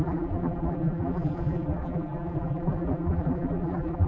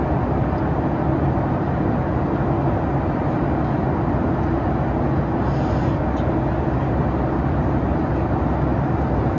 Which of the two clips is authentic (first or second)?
second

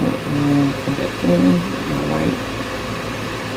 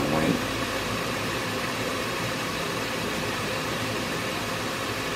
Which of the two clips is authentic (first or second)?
first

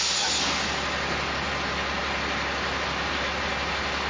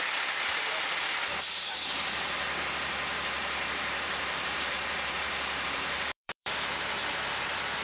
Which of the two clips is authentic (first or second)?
first